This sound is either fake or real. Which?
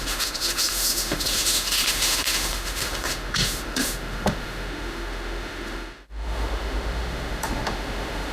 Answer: fake